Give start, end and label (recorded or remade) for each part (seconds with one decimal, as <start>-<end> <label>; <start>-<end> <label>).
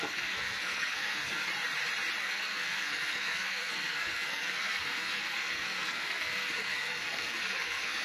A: 0.0-1.5 remade; 1.5-2.2 recorded; 2.2-8.0 remade